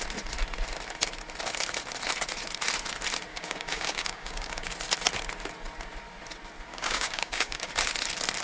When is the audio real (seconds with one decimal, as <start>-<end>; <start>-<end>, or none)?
0.0-3.3; 4.7-6.7; 7.7-8.4